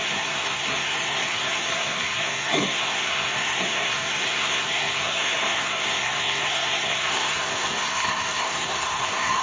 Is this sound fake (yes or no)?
yes